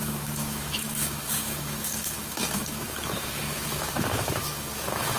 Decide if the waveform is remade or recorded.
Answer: remade